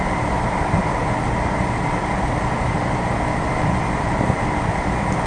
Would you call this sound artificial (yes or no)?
no